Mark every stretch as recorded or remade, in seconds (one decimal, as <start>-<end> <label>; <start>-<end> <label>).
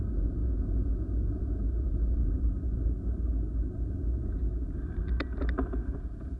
0.0-2.2 remade; 2.2-6.0 recorded; 6.0-6.4 remade